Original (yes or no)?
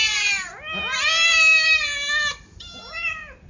yes